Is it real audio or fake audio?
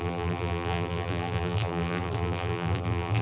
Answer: fake